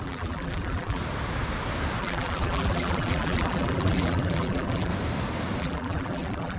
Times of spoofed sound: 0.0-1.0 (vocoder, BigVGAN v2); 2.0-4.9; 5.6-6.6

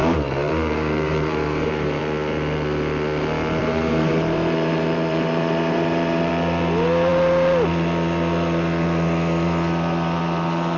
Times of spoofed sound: 0.0-2.0 (vocoder, BigVGAN v2); 3.6-6.3

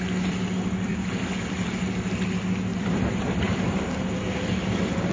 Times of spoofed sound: 2.7-3.8 (vocoder, BigVGAN v2)

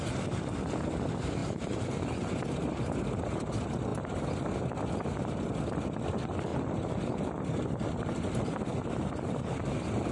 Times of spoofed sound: 1.4-2.7 (vocoder, BigVGAN v2)

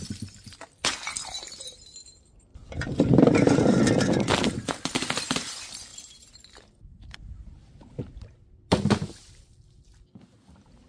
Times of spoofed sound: 2.5-3.8 (vocoder, BigVGAN v2); 5.9-8.6

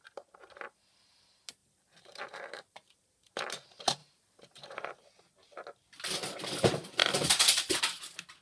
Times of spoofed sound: 1.6-3.0 (vocoder, BigVGAN v2); 4.0-5.1

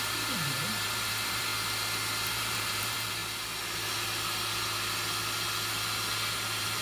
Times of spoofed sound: 0.0-1.5 (vocoder, BigVGAN v2); 2.3-3.2; 6.3-6.8